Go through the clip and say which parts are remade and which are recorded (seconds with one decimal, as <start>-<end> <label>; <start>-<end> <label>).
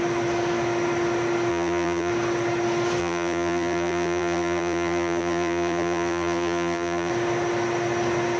0.0-1.5 recorded; 1.5-2.1 remade; 2.1-3.0 recorded; 3.0-7.1 remade; 7.1-8.4 recorded